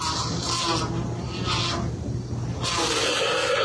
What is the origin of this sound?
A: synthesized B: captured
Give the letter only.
B